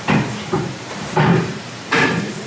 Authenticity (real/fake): fake